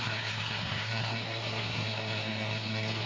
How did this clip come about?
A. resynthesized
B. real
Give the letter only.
A